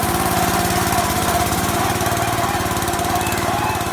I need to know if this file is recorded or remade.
recorded